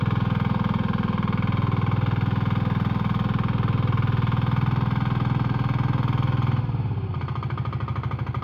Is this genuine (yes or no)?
yes